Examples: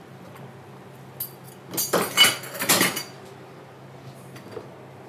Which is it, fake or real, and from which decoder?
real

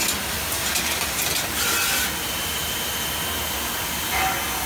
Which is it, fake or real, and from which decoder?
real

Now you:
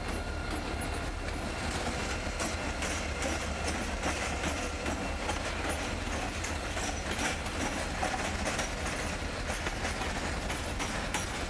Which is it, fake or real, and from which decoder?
real